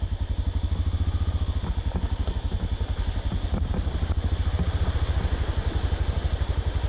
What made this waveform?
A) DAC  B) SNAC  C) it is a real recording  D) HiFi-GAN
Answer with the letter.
C